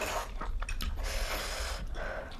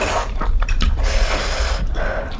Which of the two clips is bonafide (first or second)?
first